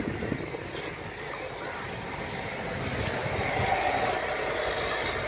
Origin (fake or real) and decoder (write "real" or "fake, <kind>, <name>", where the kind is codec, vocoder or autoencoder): real